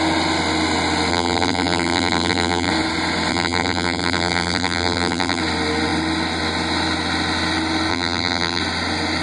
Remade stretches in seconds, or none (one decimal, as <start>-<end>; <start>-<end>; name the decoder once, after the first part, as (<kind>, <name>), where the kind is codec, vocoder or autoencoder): 1.1-2.7 (vocoder, BigVGAN v2); 3.3-5.4; 7.9-8.6